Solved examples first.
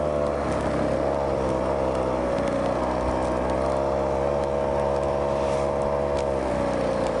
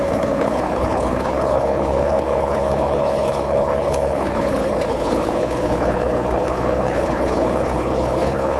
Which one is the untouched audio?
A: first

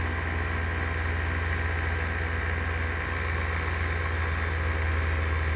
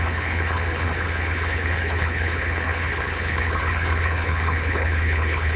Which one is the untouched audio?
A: first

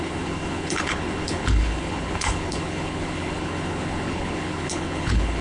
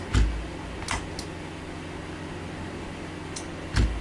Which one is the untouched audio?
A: second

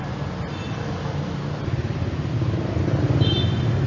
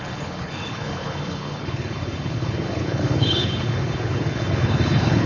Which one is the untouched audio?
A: first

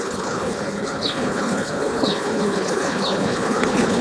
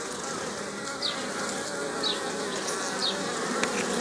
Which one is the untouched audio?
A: second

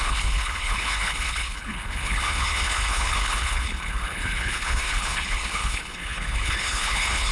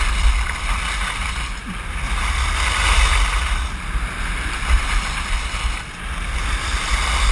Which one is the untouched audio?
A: second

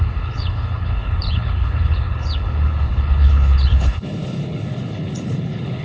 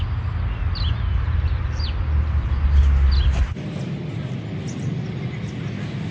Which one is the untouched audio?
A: second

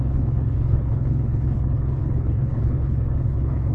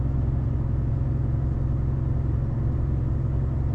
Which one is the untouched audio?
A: second